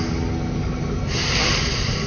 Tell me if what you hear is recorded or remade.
recorded